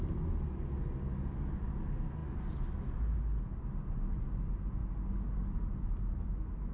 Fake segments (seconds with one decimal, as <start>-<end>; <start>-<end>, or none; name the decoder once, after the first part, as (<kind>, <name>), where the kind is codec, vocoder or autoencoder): none